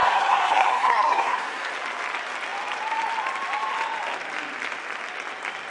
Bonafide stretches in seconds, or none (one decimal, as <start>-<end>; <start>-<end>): 1.7-5.7